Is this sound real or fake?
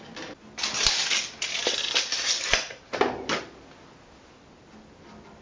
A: real